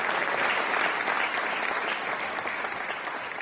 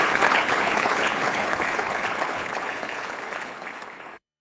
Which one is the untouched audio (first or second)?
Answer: first